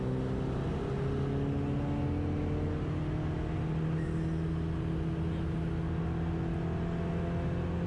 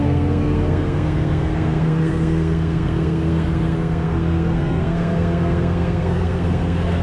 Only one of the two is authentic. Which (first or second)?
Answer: first